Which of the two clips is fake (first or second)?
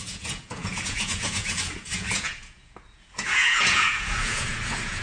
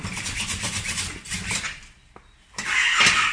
first